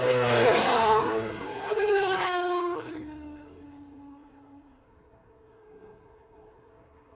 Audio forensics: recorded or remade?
remade